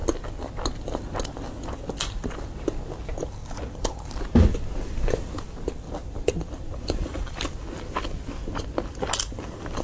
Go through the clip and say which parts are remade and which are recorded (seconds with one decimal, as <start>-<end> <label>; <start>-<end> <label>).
0.0-3.4 recorded; 3.4-4.2 remade; 4.2-6.0 recorded; 6.0-7.4 remade; 7.4-9.8 recorded